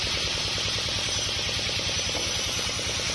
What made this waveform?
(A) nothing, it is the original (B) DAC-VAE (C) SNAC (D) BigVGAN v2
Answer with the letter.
D